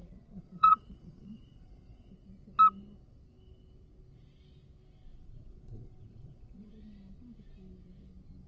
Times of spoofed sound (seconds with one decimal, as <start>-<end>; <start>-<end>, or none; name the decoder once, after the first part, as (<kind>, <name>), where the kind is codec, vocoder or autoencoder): 0.0-2.1 (vocoder, Vocos); 5.1-6.7